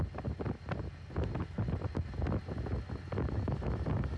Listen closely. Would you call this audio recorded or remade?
recorded